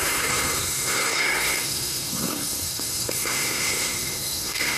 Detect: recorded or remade remade